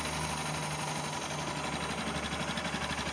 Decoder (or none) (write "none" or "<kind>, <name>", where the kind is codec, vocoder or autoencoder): none